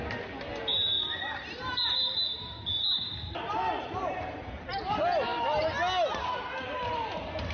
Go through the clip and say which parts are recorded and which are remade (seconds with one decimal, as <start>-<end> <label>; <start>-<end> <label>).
0.0-7.5 recorded